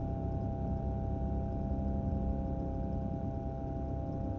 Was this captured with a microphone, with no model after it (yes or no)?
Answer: yes